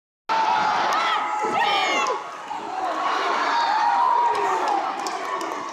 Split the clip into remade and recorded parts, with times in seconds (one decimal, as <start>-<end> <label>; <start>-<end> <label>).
0.0-5.7 recorded

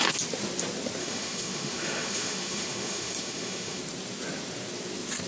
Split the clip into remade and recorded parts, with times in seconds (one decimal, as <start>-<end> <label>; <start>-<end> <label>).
0.0-1.0 recorded; 1.0-3.8 remade; 3.8-5.3 recorded

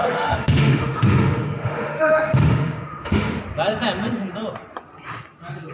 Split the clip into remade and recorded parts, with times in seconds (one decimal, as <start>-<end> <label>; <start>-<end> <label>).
0.0-3.4 remade; 3.4-5.7 recorded

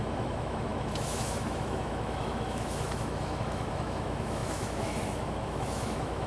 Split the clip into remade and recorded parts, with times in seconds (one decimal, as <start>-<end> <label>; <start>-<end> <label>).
0.0-6.3 remade

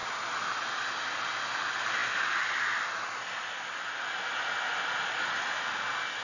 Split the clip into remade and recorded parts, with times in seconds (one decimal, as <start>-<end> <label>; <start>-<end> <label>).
0.0-6.2 recorded

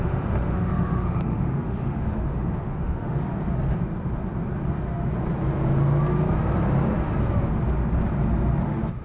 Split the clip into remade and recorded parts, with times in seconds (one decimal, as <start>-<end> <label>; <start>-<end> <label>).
0.0-3.3 remade; 3.3-8.6 recorded; 8.6-9.0 remade

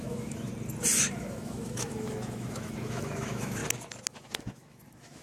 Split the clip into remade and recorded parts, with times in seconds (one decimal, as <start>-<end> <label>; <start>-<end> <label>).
0.0-0.5 remade; 0.5-1.1 recorded; 1.1-3.6 remade; 3.6-4.1 recorded; 4.1-5.2 remade

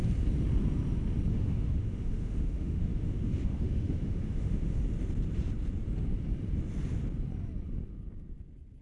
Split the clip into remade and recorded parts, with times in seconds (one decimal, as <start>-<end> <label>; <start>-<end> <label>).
0.0-1.3 recorded; 1.3-4.8 remade; 4.8-8.8 recorded